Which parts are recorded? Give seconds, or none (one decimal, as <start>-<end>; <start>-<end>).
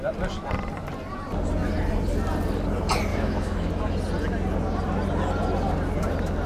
0.0-3.1; 3.7-6.5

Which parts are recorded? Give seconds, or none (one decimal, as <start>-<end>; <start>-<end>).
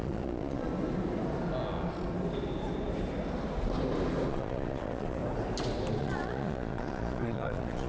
0.7-4.3; 5.2-6.0